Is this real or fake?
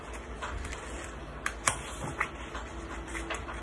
real